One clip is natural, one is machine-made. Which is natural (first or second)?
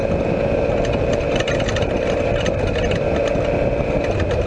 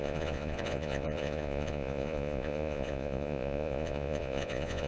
first